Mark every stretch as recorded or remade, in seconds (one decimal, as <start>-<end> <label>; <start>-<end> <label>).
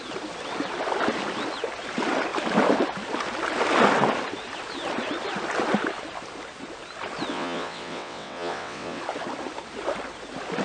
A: 0.0-7.3 recorded; 7.3-9.0 remade; 9.0-10.6 recorded